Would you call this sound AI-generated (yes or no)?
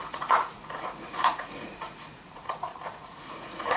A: yes